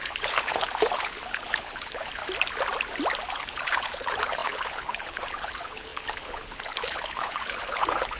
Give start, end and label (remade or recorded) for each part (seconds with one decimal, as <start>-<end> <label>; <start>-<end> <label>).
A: 0.0-2.2 remade; 2.2-3.3 recorded; 3.3-8.2 remade